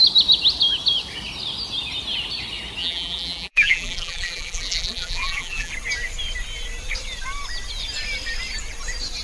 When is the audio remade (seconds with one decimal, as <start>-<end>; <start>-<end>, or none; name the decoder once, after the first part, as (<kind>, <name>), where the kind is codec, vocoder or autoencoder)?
2.8-5.7 (vocoder, BigVGAN v2)

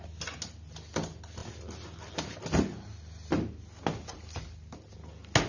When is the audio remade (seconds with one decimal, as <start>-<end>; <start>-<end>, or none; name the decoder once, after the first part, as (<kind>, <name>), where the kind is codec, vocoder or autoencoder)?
none